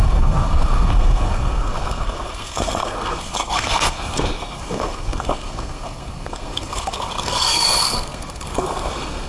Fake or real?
fake